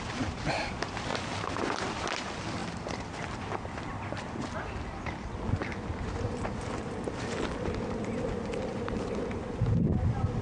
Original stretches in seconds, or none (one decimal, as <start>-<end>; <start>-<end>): 0.0-1.1; 1.7-8.7; 9.6-10.4